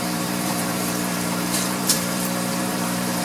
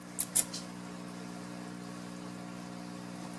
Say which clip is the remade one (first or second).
first